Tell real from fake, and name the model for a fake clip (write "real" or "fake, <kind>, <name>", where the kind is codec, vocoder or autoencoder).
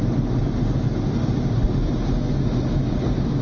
real